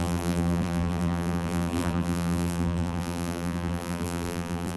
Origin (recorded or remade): remade